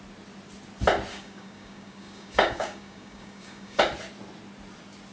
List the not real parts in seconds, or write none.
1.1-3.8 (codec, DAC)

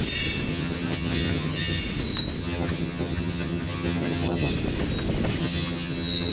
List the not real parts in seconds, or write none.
0.5-1.8 (vocoder, HiFi-GAN); 2.4-4.5; 5.4-6.3

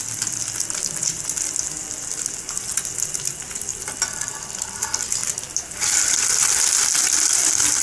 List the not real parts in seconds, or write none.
3.7-4.4 (vocoder, BigVGAN v2)

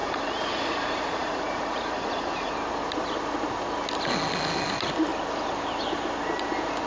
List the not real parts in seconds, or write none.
0.0-2.5 (vocoder, Vocos)

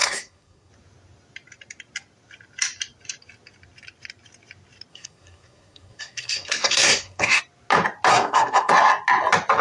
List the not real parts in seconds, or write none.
0.0-0.7 (codec, SNAC); 4.9-7.4; 8.1-8.7

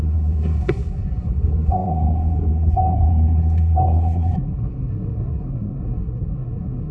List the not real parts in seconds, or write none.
0.0-6.9 (codec, SNAC)

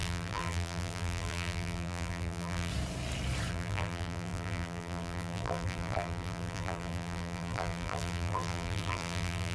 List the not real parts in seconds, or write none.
0.0-2.7 (vocoder, BigVGAN v2); 3.5-9.5